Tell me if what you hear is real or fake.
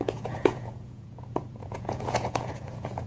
fake